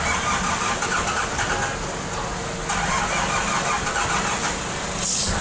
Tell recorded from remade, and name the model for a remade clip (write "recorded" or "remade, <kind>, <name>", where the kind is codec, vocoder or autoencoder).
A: recorded